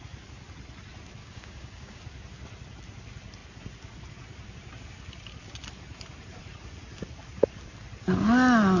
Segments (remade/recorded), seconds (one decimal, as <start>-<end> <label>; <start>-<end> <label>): 0.0-1.2 recorded; 1.2-2.0 remade; 2.0-8.8 recorded